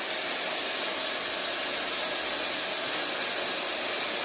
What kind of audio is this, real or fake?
real